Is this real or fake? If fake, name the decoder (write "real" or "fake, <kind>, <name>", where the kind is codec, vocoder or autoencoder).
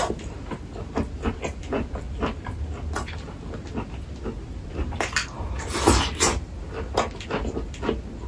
real